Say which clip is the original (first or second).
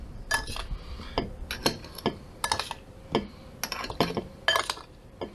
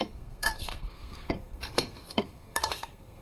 first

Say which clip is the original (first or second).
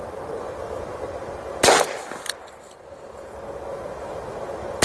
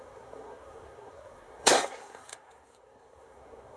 first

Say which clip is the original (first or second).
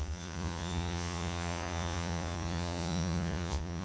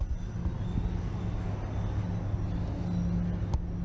second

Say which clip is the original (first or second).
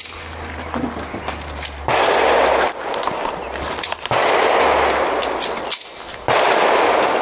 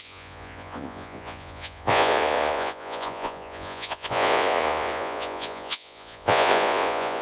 first